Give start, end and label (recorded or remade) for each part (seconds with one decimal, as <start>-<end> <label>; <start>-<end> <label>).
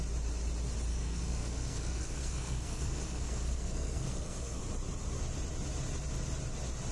0.0-0.9 recorded; 0.9-4.6 remade; 4.6-6.9 recorded